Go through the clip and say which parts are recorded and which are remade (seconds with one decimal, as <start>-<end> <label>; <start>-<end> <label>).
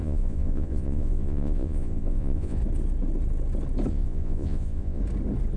0.0-2.6 remade; 2.6-3.9 recorded; 3.9-5.0 remade; 5.0-5.6 recorded